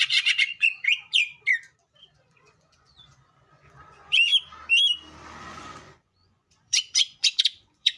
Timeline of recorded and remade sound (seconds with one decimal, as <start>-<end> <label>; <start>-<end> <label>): 0.0-1.2 remade; 1.2-2.0 recorded; 2.0-4.3 remade; 4.3-5.4 recorded; 5.4-8.0 remade